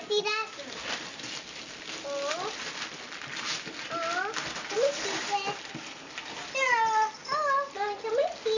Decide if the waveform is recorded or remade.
remade